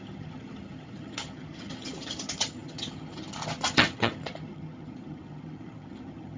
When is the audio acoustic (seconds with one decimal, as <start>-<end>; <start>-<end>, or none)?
none